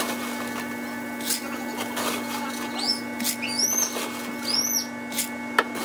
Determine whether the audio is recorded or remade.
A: recorded